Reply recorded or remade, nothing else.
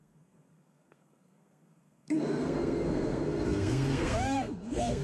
remade